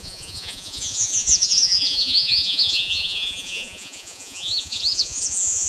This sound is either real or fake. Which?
fake